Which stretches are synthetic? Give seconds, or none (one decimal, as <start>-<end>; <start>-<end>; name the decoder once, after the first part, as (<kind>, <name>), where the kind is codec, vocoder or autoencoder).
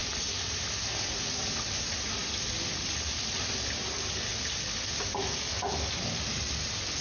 none